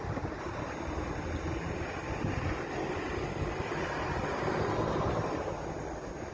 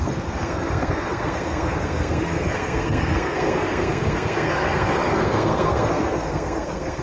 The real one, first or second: first